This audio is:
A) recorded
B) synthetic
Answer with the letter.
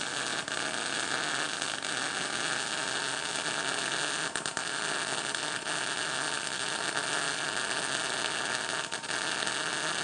A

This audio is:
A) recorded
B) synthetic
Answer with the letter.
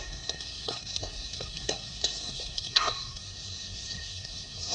B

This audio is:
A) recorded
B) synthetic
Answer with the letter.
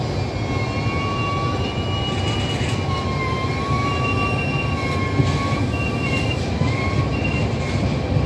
A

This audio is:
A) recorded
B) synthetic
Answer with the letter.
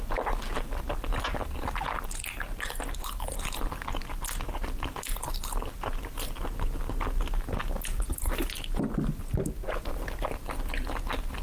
A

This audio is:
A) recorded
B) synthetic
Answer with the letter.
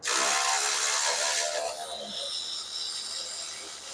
A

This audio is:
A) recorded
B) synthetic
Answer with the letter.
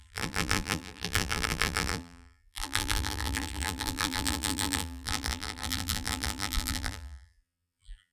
B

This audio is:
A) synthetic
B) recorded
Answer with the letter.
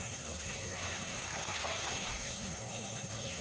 A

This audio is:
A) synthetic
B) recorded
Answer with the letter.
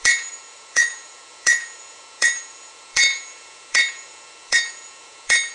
A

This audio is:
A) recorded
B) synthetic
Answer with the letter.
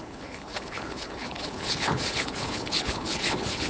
B